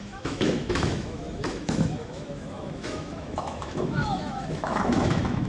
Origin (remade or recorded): remade